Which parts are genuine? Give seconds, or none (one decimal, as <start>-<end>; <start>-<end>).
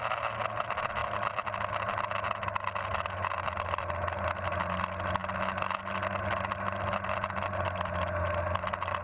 0.0-9.0